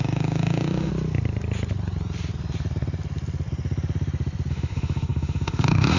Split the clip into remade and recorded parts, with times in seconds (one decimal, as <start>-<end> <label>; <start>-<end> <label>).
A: 0.0-0.9 remade; 0.9-4.5 recorded; 4.5-6.0 remade